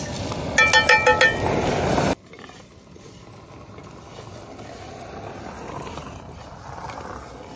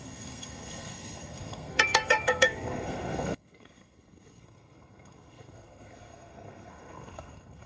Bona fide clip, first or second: first